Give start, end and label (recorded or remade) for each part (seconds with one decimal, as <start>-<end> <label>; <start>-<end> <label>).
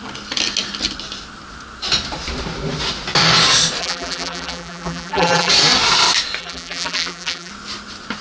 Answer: 0.0-3.8 recorded; 3.8-5.5 remade; 5.5-6.4 recorded; 6.4-7.5 remade; 7.5-8.2 recorded